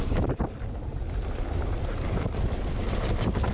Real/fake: fake